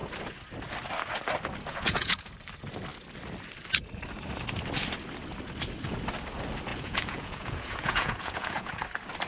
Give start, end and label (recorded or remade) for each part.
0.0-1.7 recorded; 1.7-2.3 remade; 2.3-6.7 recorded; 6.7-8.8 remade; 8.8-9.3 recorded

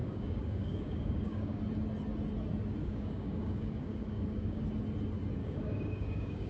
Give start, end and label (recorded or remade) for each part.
0.0-1.6 remade; 1.6-2.8 recorded; 2.8-4.6 remade; 4.6-5.4 recorded; 5.4-6.5 remade

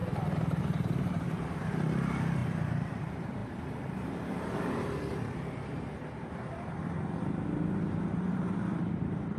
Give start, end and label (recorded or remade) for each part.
0.0-6.8 remade; 6.8-8.1 recorded; 8.1-9.4 remade

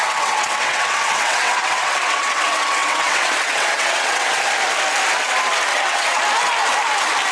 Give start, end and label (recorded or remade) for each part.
0.0-4.4 remade; 4.4-5.7 recorded; 5.7-6.2 remade; 6.2-7.3 recorded

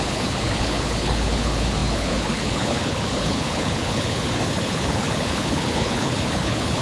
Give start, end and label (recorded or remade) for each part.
0.0-6.8 remade

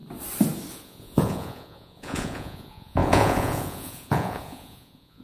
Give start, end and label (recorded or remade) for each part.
0.0-0.7 recorded; 0.7-5.2 remade